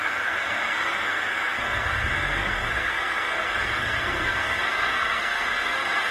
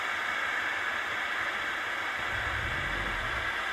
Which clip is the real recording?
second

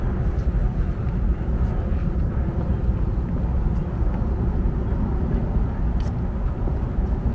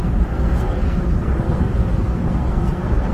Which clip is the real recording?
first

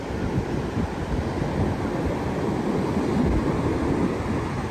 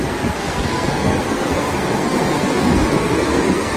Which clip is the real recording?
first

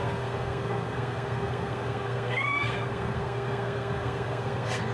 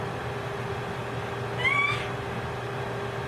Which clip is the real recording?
second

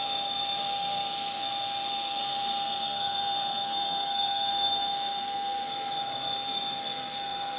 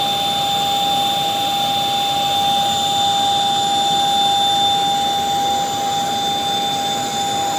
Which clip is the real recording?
second